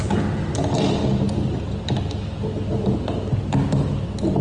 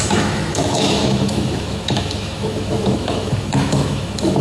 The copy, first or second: second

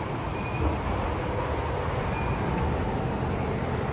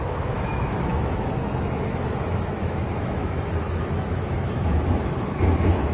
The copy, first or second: second